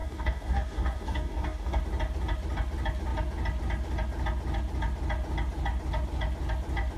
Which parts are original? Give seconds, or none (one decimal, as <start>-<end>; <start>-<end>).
1.8-7.0